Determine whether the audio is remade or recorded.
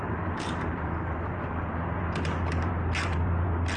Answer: remade